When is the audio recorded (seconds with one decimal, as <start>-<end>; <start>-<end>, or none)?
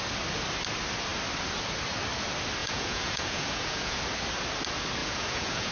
0.0-2.6; 4.0-5.0